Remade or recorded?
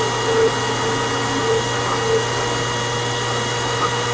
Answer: recorded